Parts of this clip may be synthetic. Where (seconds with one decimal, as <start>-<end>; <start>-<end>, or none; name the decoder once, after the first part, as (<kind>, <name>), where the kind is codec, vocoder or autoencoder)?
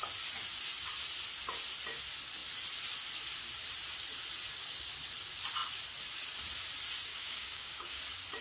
7.1-8.0 (codec, DAC)